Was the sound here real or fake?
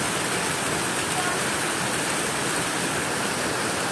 real